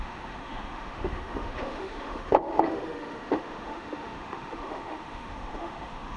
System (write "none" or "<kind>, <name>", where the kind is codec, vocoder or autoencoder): autoencoder, DAC-VAE